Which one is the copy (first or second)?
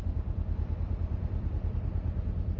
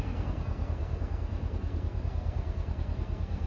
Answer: second